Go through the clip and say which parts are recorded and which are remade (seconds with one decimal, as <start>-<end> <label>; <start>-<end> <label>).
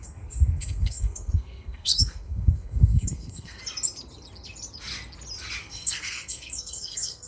0.0-3.6 remade; 3.6-5.6 recorded; 5.6-7.3 remade